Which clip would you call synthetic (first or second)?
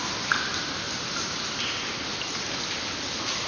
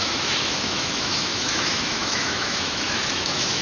second